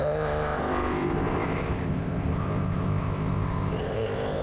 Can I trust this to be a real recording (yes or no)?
no